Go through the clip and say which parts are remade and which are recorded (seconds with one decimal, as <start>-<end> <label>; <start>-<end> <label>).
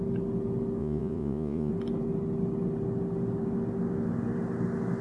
0.0-0.8 recorded; 0.8-1.7 remade; 1.7-5.0 recorded